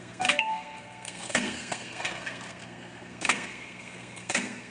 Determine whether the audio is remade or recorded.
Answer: remade